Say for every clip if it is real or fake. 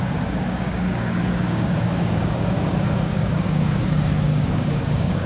fake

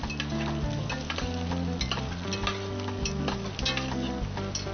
real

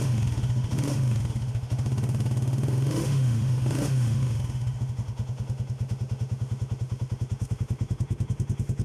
fake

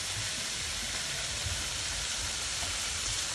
fake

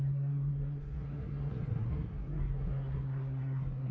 fake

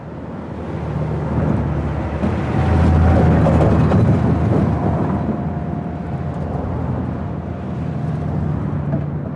real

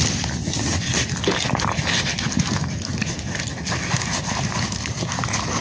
real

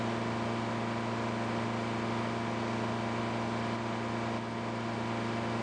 real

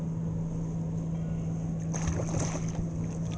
real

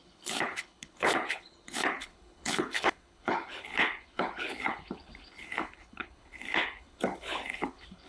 fake